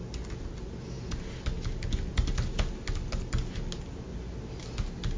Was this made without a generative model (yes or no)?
yes